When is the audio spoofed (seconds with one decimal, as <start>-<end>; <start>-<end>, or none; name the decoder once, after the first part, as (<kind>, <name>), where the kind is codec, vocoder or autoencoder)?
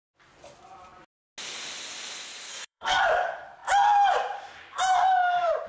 2.5-3.0 (codec, SNAC)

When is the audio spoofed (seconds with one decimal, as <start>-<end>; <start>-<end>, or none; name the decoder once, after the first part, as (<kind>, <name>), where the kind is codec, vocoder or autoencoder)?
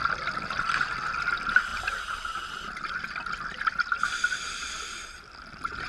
none